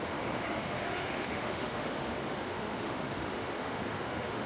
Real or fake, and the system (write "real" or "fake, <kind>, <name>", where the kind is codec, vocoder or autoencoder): fake, autoencoder, DAC-VAE